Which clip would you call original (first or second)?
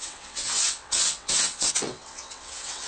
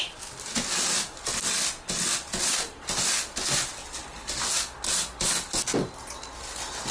second